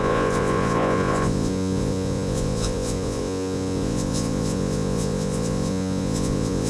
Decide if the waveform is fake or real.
fake